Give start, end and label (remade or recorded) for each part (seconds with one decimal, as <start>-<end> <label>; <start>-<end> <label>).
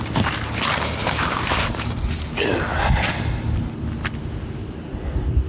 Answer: 0.0-1.0 recorded; 1.0-2.3 remade; 2.3-5.5 recorded